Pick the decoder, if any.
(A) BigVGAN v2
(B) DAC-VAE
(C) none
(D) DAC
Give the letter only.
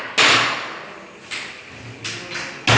C